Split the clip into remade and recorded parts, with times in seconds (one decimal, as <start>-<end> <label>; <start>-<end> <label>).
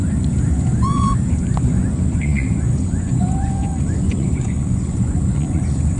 0.0-6.0 remade